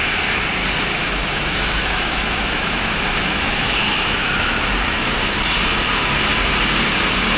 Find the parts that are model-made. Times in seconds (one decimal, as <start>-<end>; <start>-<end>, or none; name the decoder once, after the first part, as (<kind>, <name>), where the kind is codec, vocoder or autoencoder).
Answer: 1.0-4.6 (autoencoder, DAC-VAE)